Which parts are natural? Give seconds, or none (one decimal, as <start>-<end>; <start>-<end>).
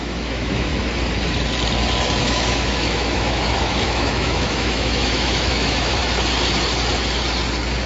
0.7-2.2; 6.0-7.9